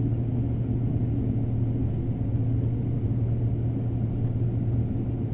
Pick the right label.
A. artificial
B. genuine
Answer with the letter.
B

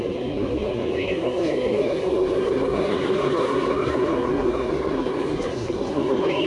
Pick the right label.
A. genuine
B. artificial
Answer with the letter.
B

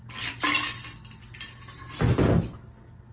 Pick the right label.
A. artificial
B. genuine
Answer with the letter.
B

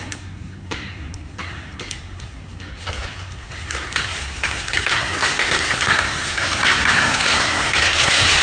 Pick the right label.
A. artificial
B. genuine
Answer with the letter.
A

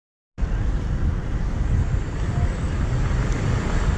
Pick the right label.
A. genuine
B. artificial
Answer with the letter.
A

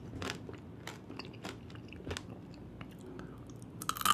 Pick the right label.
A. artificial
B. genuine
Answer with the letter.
B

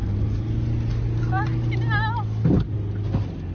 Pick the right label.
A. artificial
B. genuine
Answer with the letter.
B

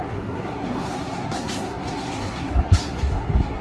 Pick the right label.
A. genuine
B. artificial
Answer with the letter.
B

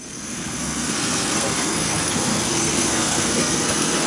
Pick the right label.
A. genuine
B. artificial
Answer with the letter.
B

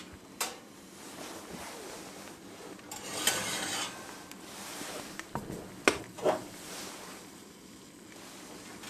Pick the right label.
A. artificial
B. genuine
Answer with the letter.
B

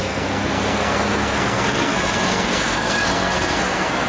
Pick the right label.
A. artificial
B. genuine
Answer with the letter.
A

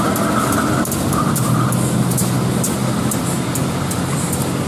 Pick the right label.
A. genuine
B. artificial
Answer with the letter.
A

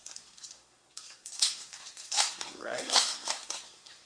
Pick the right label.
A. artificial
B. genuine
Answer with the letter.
A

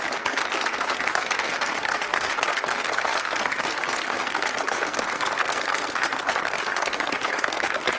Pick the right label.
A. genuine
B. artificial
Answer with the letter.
B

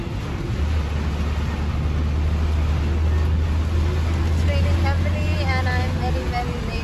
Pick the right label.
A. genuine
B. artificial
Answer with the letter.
A